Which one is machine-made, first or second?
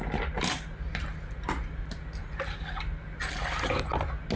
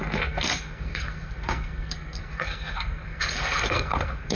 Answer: second